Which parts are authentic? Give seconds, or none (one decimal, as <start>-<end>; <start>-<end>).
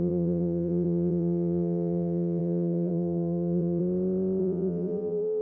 3.8-4.4